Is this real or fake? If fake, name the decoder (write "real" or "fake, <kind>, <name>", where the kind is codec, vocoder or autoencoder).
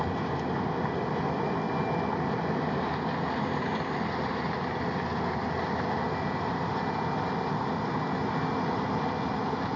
real